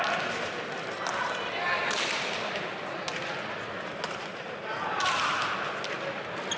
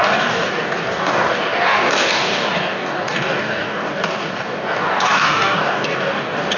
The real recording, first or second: first